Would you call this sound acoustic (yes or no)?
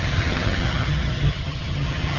no